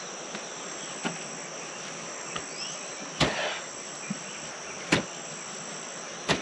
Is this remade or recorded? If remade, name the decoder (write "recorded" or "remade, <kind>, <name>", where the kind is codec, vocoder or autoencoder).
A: recorded